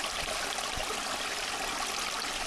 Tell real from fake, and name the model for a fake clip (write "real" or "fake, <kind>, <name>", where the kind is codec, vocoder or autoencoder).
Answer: real